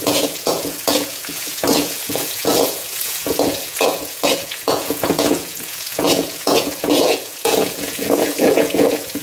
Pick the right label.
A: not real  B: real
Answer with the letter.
A